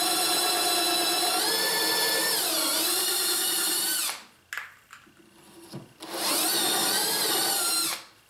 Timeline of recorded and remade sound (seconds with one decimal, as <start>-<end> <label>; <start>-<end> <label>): 0.0-2.7 recorded; 2.7-4.0 remade; 4.0-6.8 recorded; 6.8-7.8 remade; 7.8-8.3 recorded